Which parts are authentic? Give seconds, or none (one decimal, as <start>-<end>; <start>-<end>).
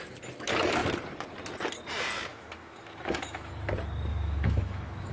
0.0-2.3; 3.5-4.1